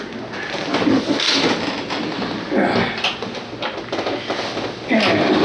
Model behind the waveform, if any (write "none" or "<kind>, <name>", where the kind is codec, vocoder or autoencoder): none